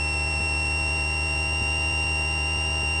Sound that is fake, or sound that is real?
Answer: real